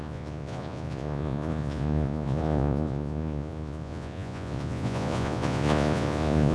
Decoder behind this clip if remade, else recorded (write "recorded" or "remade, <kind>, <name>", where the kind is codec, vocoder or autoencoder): remade, vocoder, Vocos